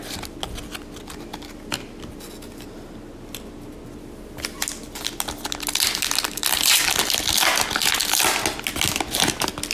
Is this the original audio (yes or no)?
yes